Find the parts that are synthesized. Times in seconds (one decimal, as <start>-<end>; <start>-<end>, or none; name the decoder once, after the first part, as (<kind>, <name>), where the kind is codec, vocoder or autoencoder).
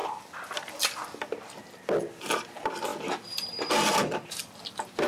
none